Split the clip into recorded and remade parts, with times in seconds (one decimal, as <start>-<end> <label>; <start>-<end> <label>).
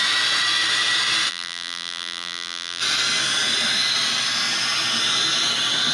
0.0-1.3 recorded; 1.3-2.8 remade; 2.8-5.9 recorded